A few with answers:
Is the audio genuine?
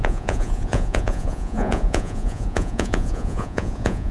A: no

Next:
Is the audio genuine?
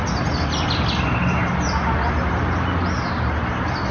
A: yes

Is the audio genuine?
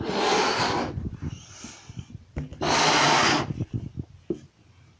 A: yes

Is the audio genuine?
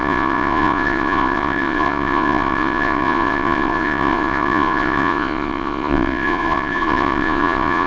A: no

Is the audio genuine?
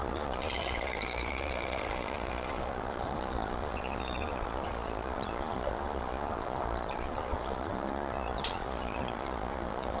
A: no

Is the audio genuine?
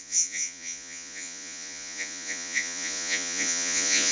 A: no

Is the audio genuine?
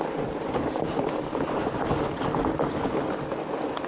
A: yes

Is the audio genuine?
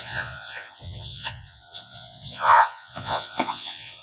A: no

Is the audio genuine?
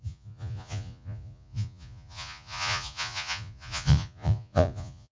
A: no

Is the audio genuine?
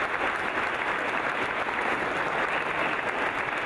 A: yes